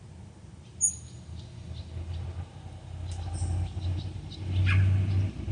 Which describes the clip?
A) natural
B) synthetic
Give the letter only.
A